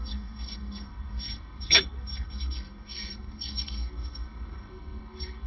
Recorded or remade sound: remade